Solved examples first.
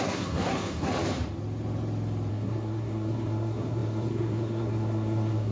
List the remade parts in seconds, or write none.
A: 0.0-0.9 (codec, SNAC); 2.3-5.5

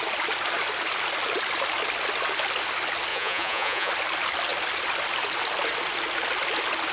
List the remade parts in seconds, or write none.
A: 3.1-3.9 (vocoder, Vocos)

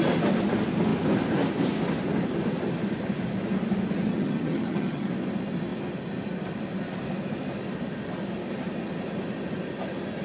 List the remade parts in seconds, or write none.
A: 4.1-5.1 (vocoder, HiFi-GAN)

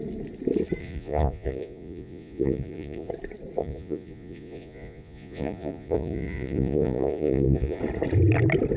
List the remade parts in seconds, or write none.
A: 0.8-3.1 (vocoder, Vocos); 3.6-7.8

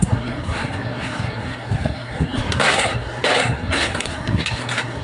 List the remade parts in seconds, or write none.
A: 0.0-5.0 (codec, SNAC)

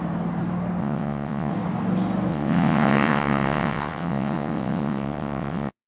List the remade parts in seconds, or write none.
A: 0.8-1.5 (vocoder, WaveNeXt); 2.3-5.9

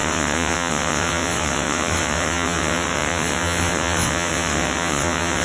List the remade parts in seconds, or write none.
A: 0.0-5.4 (vocoder, WaveNeXt)